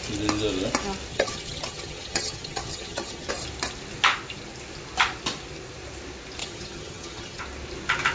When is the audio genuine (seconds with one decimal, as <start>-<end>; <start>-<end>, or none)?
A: 0.0-1.1; 3.3-6.4; 7.4-8.1